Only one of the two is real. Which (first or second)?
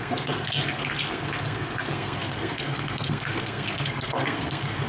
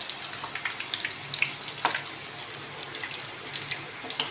second